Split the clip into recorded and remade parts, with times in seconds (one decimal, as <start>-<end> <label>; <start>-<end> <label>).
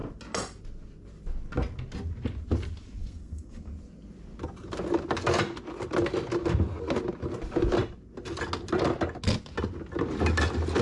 0.0-3.0 recorded; 3.0-3.7 remade; 3.7-10.8 recorded